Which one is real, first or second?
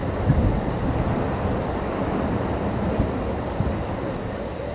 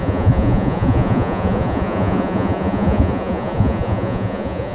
first